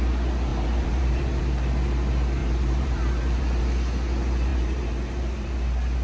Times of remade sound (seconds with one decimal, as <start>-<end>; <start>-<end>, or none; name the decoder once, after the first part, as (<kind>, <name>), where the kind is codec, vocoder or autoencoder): 0.5-1.4 (vocoder, BigVGAN v2); 2.4-3.6; 4.5-5.5